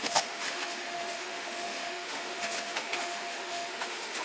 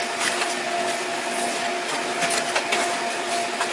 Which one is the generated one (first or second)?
first